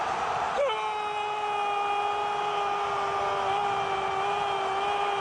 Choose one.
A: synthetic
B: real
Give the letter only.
B